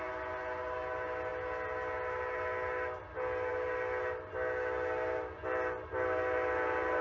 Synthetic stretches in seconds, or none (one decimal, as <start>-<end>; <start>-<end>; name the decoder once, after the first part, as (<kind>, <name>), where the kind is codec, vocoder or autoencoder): none